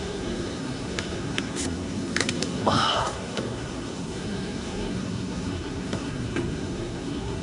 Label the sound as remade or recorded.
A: remade